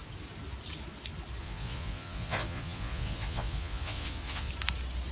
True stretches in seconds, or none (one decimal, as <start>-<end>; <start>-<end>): 0.0-1.4; 4.5-5.1